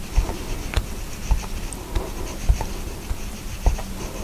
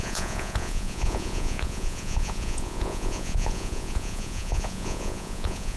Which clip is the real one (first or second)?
first